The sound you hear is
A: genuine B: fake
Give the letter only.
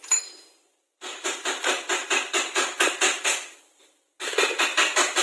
A